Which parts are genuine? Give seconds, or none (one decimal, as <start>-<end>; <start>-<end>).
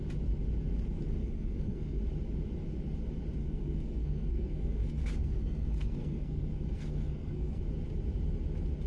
0.0-1.2; 2.0-3.4; 7.6-8.9